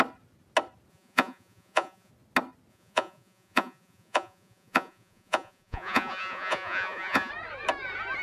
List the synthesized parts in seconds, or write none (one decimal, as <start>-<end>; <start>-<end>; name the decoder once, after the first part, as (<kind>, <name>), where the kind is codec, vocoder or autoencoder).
0.9-2.1 (vocoder, Vocos); 2.7-7.3